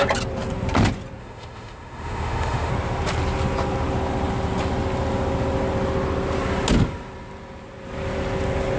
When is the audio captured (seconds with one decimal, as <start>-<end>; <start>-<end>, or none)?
0.0-1.2; 2.7-8.8